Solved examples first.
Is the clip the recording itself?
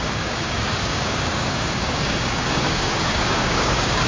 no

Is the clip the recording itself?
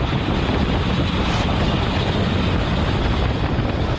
yes